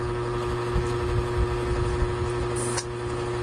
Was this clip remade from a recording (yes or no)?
no